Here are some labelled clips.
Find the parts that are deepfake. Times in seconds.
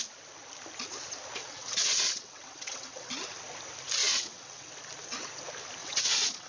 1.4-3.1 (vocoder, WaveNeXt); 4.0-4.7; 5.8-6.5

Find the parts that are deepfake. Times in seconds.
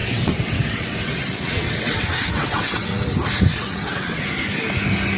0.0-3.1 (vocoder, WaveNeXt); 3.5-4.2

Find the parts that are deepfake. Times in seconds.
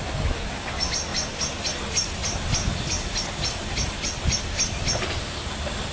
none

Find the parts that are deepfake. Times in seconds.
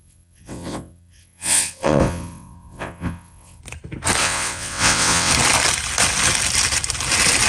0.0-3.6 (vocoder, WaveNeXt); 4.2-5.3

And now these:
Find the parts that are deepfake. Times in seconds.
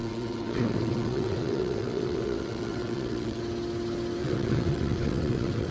0.0-3.4 (vocoder, WaveNeXt); 4.2-5.7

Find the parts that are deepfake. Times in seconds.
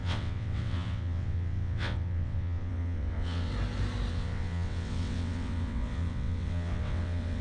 0.0-3.5 (vocoder, WaveNeXt); 4.1-7.4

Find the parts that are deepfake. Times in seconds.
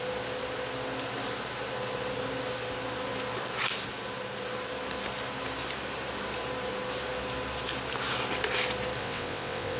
9.0-9.8 (vocoder, WaveNeXt)